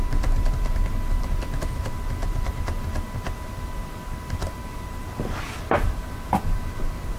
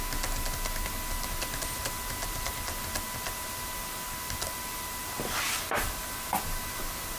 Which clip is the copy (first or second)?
first